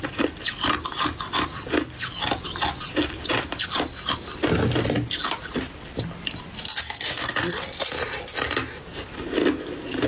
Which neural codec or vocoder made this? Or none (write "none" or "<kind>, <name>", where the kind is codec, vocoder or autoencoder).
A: none